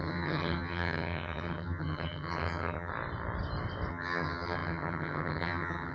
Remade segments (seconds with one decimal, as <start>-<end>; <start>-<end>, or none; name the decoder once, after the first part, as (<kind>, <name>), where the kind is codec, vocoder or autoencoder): 0.0-2.9 (vocoder, HiFi-GAN); 3.9-5.9